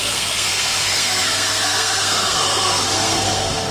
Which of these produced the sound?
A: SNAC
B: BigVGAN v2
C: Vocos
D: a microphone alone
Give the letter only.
A